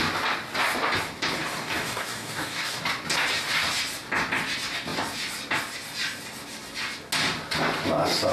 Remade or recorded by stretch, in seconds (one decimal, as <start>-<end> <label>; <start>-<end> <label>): 0.0-1.5 recorded; 1.5-2.8 remade; 2.8-8.3 recorded